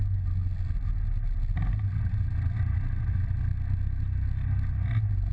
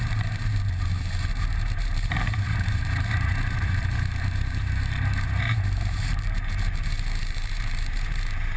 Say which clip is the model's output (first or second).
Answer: second